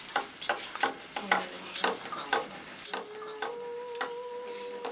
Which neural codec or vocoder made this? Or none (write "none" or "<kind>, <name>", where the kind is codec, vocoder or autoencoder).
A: none